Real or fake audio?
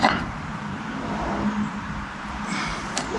fake